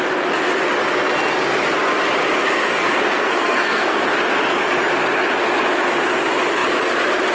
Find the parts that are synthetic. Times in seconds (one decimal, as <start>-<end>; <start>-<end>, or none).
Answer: 2.6-4.0